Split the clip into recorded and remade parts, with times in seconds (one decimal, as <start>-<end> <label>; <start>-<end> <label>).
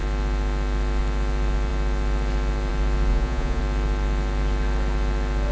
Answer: 0.0-3.1 recorded; 3.1-3.6 remade; 3.6-5.5 recorded